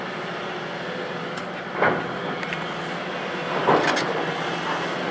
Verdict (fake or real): real